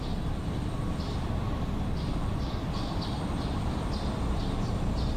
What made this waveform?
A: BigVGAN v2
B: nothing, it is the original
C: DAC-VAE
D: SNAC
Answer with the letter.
B